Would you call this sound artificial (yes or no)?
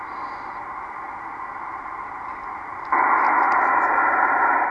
no